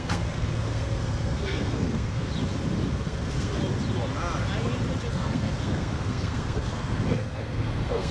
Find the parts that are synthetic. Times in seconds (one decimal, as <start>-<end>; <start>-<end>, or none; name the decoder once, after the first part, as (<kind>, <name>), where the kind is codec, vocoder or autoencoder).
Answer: 0.0-2.3 (codec, SNAC); 2.9-3.6; 5.1-8.1